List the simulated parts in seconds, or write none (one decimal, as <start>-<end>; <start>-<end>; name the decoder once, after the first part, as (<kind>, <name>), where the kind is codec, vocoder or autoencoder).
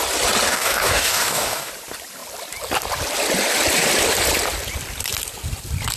0.5-1.7 (codec, DAC)